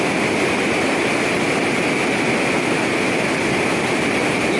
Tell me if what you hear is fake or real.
real